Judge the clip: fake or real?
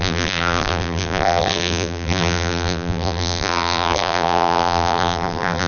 fake